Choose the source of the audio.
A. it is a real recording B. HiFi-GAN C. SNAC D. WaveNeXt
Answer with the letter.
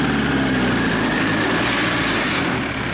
A